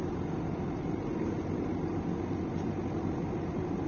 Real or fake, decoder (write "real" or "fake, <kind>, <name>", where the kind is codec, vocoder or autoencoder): real